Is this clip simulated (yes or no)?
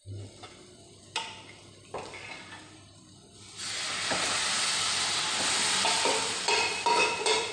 no